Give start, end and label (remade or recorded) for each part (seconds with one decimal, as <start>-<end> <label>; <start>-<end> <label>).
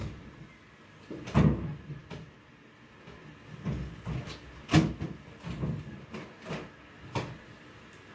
0.0-1.0 remade; 1.0-8.1 recorded